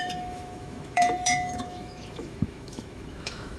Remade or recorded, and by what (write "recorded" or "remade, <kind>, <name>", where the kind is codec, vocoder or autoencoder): remade, autoencoder, DAC-VAE